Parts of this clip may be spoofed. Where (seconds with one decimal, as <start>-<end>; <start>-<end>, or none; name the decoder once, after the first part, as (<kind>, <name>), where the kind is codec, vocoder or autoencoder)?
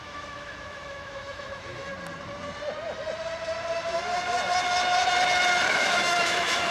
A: 0.0-1.9 (autoencoder, DAC-VAE); 5.7-6.7